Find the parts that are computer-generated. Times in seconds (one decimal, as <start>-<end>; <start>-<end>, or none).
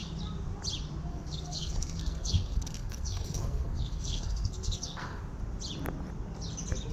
1.1-5.2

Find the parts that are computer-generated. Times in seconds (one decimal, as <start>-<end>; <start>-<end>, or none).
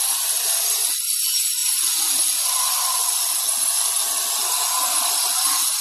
none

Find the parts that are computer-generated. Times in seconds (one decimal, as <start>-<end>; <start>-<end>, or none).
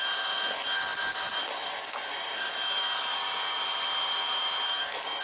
none